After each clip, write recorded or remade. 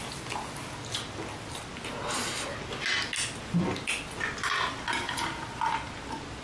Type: recorded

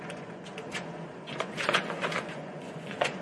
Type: remade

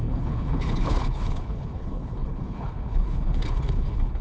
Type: remade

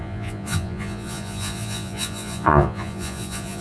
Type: remade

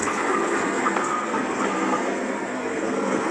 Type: remade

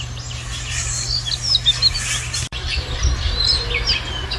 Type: recorded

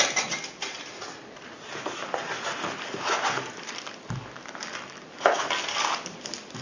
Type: recorded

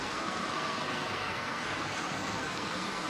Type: remade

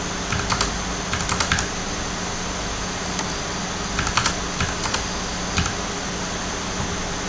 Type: recorded